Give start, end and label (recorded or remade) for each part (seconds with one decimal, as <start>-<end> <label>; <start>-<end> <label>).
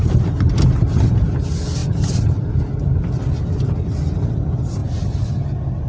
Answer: 0.0-5.9 recorded